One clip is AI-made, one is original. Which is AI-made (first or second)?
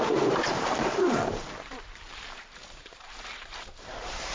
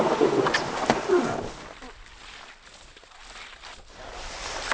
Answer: first